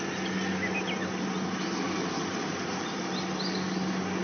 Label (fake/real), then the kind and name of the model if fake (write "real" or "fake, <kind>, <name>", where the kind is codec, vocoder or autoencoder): real